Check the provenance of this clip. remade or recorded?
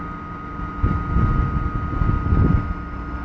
recorded